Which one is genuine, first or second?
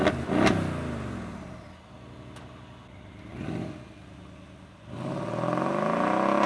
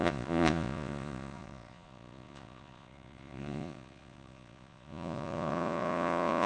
first